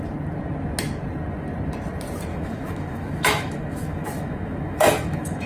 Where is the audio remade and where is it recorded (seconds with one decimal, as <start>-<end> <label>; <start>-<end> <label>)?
0.0-2.3 recorded; 2.3-5.5 remade